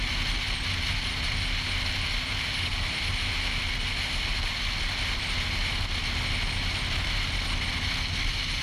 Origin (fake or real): real